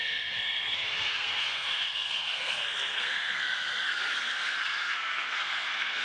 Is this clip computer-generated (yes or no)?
yes